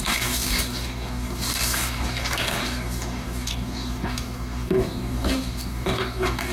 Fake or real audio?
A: fake